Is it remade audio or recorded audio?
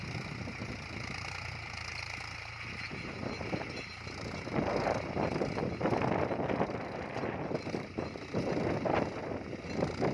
recorded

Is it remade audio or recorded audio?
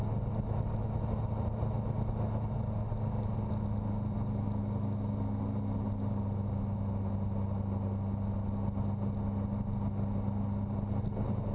recorded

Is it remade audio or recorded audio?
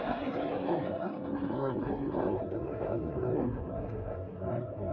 remade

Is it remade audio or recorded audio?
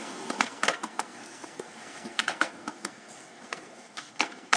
remade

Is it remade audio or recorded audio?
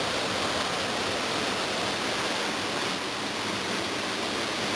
recorded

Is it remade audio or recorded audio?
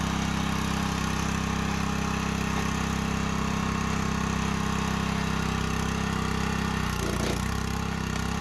recorded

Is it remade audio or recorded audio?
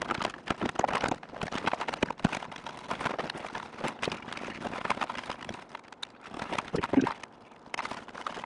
recorded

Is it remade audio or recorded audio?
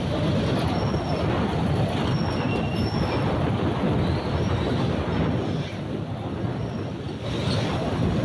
recorded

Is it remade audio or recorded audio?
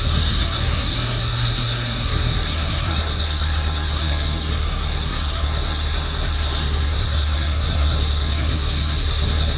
remade